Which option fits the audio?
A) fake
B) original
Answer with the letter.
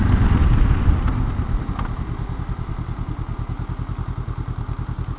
B